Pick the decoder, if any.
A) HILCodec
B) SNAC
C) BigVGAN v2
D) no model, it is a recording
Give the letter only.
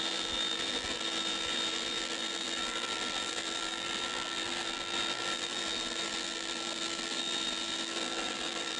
C